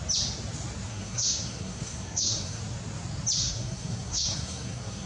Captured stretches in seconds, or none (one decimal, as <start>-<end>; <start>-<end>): 0.0-0.9; 2.6-3.4